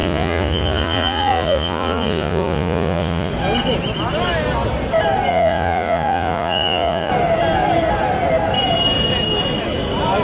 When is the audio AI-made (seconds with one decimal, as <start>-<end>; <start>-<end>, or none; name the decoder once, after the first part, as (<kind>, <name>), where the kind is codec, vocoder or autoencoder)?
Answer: 0.0-3.3 (vocoder, Vocos); 5.3-7.1